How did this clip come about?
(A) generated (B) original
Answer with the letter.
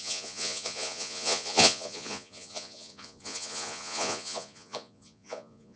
A